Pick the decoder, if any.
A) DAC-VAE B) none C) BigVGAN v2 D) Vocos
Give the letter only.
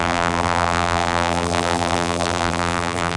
C